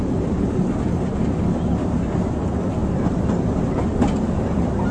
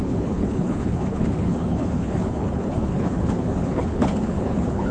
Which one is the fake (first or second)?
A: second